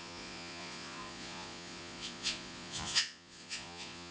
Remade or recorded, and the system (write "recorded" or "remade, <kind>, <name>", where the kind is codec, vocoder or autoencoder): remade, vocoder, Vocos